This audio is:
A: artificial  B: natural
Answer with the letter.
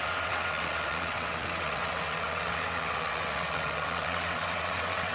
A